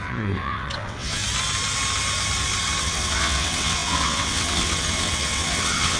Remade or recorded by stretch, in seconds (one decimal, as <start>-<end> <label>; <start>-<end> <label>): 0.0-1.2 remade; 1.2-2.8 recorded; 2.8-6.0 remade